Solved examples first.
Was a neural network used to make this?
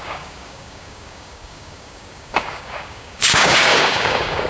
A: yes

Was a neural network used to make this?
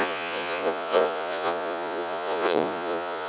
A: yes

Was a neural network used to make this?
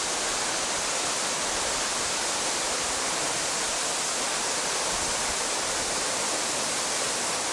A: yes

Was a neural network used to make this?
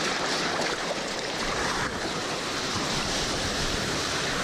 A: yes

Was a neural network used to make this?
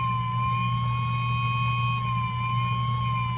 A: no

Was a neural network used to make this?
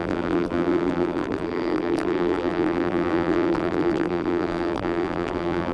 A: yes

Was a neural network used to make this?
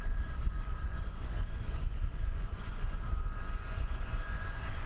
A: yes